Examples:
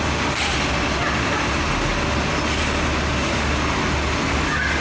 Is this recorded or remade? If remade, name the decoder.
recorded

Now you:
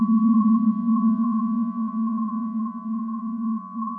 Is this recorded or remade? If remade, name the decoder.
remade, vocoder, Vocos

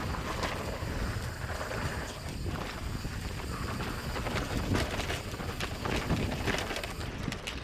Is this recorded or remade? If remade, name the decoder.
recorded